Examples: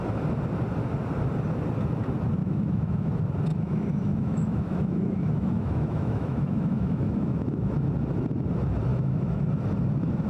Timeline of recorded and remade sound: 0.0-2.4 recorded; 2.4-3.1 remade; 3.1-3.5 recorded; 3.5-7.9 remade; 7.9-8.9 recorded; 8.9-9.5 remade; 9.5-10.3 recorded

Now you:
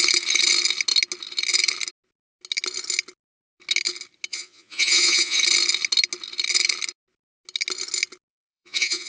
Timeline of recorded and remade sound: 0.0-4.3 recorded; 4.3-5.4 remade; 5.4-8.3 recorded; 8.3-9.1 remade

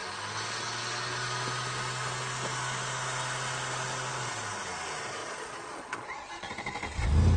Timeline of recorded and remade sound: 0.0-5.2 recorded; 5.2-6.5 remade; 6.5-7.4 recorded

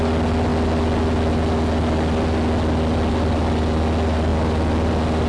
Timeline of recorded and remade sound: 0.0-5.3 recorded

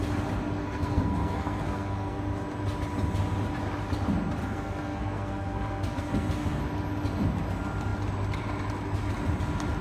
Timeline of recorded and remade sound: 0.0-0.6 recorded; 0.6-2.2 remade; 2.2-4.4 recorded; 4.4-6.6 remade; 6.6-9.8 recorded

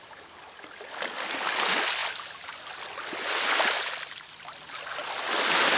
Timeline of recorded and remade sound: 0.0-5.8 recorded

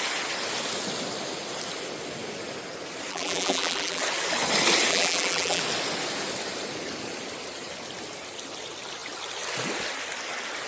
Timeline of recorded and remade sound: 0.0-3.1 recorded; 3.1-4.0 remade; 4.0-4.9 recorded; 4.9-5.6 remade; 5.6-10.7 recorded

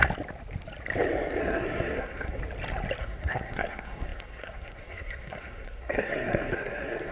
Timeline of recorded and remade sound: 0.0-1.4 recorded; 1.4-2.4 remade; 2.4-3.0 recorded; 3.0-7.1 remade